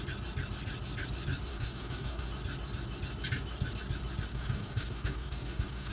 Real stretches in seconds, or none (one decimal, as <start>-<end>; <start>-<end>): 0.0-1.5; 2.3-4.3